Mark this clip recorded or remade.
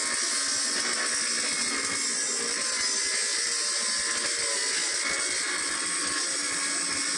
recorded